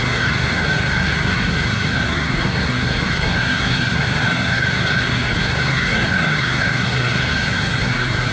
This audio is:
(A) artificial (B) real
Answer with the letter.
A